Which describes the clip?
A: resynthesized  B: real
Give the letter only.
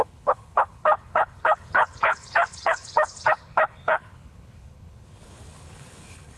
A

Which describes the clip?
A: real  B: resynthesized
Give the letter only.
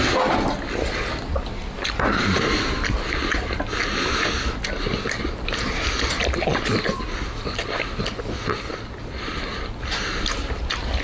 A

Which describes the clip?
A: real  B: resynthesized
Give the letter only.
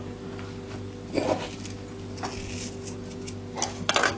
A